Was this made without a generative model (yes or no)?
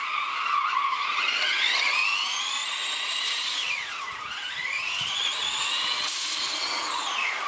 no